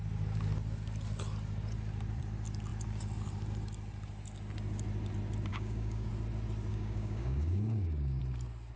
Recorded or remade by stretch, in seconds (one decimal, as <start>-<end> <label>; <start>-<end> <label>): 0.0-5.5 recorded; 5.5-6.1 remade; 6.1-6.7 recorded; 6.7-8.2 remade; 8.2-8.8 recorded